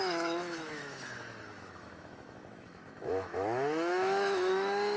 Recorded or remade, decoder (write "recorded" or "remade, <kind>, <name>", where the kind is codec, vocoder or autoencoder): remade, autoencoder, DAC-VAE